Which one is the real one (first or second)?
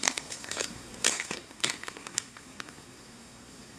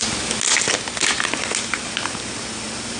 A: second